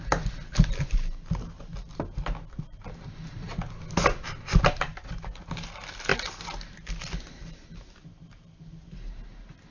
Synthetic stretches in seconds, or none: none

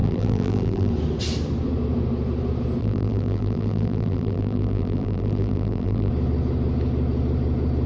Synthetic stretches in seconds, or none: 0.0-0.9; 2.8-6.1

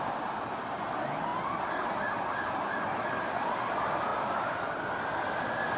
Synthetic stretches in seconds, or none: 4.1-5.8

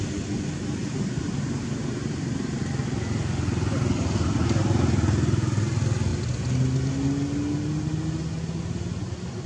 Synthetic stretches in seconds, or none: 0.8-2.6

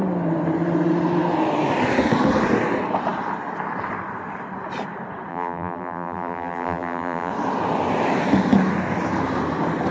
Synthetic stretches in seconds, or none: 5.3-7.3

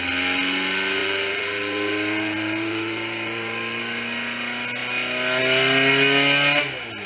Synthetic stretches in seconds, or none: 1.0-3.8